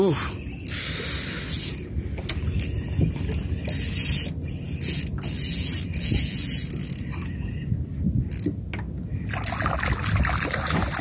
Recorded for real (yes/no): yes